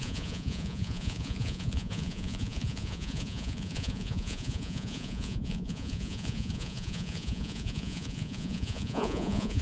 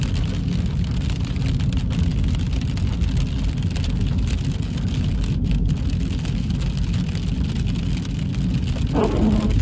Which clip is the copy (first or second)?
first